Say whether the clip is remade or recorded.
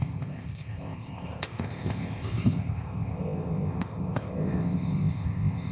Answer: remade